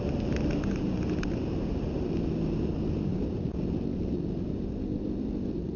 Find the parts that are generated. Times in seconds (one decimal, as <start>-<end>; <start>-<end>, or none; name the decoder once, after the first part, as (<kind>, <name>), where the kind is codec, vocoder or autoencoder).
none